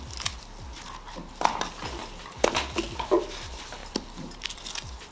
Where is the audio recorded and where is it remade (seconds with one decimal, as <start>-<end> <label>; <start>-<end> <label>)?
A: 0.0-3.8 recorded; 3.8-4.6 remade; 4.6-5.1 recorded